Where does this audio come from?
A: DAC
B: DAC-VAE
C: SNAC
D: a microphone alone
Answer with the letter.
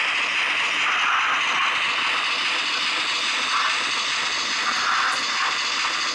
D